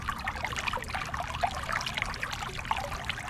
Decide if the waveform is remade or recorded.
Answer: recorded